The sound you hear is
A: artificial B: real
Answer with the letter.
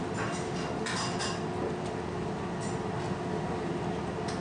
B